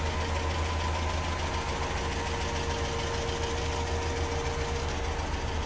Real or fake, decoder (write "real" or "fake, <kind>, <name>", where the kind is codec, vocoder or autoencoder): real